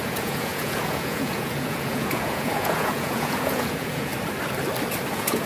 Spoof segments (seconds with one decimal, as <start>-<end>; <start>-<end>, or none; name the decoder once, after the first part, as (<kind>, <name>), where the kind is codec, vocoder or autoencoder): 0.0-4.1 (vocoder, Vocos); 5.1-5.5